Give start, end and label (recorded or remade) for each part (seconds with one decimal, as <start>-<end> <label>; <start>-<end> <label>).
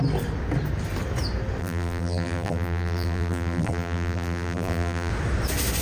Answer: 0.0-1.6 recorded; 1.6-5.1 remade; 5.1-5.8 recorded